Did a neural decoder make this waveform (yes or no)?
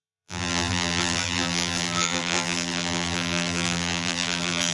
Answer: yes